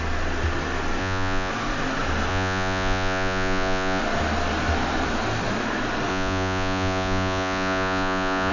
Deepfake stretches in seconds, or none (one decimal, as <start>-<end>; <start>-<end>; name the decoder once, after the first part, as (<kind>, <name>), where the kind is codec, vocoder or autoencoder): 1.0-1.5 (vocoder, Vocos); 2.3-4.0; 6.1-8.5

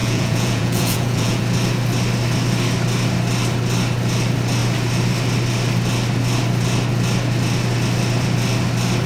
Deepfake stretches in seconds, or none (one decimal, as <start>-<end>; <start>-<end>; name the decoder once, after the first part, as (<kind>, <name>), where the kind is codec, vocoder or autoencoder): 0.0-1.4 (vocoder, Vocos)

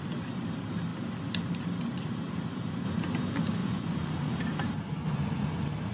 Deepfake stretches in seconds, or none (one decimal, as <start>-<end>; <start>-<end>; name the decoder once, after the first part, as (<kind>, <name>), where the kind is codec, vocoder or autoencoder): 3.6-4.1 (vocoder, Vocos)

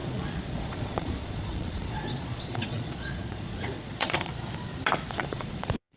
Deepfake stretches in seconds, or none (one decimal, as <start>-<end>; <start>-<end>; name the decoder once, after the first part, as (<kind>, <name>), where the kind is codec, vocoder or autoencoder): 0.0-4.3 (vocoder, Vocos); 5.1-6.0